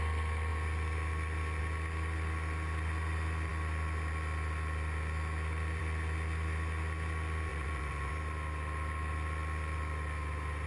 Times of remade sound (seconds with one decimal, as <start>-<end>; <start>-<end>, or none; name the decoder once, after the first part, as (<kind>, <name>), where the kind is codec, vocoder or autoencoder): 7.5-8.1 (vocoder, Vocos)